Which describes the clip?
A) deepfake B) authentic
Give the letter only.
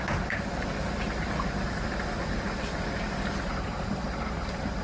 B